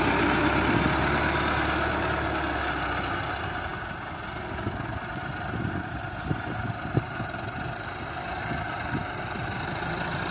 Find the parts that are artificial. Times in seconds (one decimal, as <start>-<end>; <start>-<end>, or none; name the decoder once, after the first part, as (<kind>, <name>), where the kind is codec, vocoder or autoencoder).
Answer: none